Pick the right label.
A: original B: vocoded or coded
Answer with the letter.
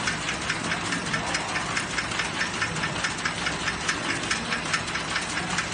A